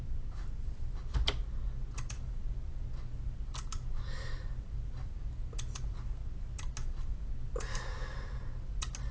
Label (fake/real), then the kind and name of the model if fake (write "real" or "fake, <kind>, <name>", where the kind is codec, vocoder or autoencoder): real